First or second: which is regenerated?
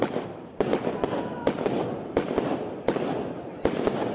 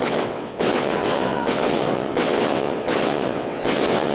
second